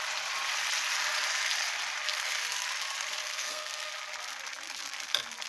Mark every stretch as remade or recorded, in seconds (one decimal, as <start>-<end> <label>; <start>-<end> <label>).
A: 0.0-3.2 recorded; 3.2-3.9 remade; 3.9-5.5 recorded